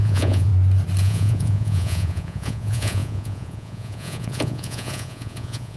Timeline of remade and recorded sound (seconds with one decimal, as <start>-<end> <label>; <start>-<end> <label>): 0.0-0.5 remade; 0.5-1.0 recorded; 1.0-5.8 remade